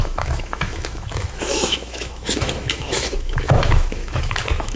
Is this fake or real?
fake